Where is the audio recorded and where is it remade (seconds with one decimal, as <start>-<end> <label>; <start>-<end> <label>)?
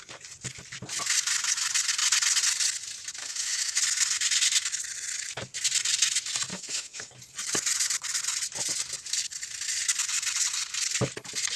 0.0-3.2 recorded; 3.2-3.8 remade; 3.8-6.5 recorded; 6.5-7.1 remade; 7.1-11.6 recorded